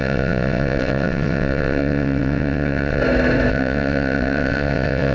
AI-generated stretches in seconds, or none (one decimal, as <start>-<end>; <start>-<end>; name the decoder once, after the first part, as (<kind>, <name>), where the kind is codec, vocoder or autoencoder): 0.0-3.0 (vocoder, WaveNeXt); 3.5-5.1